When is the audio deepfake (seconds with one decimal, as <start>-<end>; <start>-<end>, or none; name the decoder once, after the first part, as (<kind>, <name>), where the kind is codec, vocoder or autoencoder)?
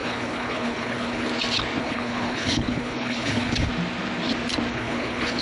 0.0-1.3 (codec, HILCodec); 1.8-3.7; 4.7-5.4